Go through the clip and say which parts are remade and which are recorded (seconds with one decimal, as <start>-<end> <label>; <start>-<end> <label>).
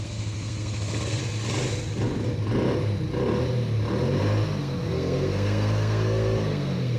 0.0-1.2 remade; 1.2-4.6 recorded; 4.6-7.0 remade